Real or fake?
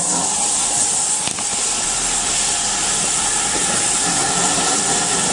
real